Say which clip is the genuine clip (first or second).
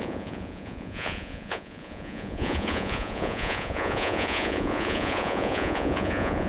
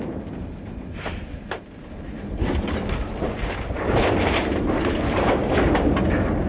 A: second